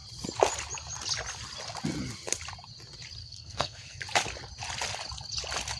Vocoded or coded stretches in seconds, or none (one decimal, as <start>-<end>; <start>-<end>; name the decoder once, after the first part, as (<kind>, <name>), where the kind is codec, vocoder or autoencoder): 3.2-4.0 (codec, SNAC)